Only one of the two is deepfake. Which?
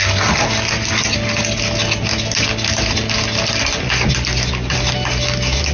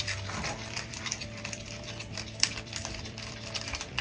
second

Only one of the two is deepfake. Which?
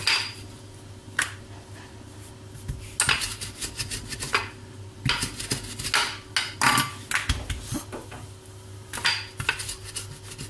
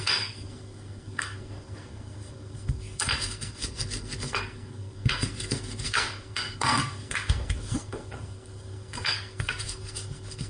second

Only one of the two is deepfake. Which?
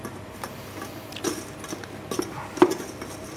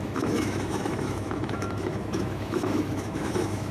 second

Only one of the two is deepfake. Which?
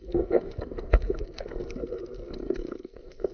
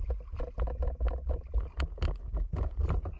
first